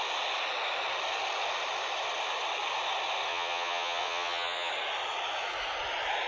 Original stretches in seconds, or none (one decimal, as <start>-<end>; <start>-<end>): 0.0-3.3; 4.7-6.3